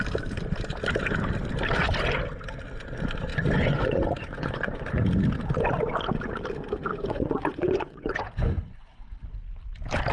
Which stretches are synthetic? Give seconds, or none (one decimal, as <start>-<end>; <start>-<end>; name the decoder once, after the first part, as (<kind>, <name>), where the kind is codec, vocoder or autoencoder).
3.3-5.0 (vocoder, Vocos); 6.9-9.0